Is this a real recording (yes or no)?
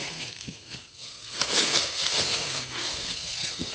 no